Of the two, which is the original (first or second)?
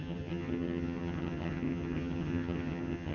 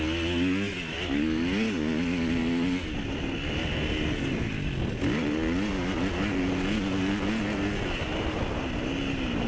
second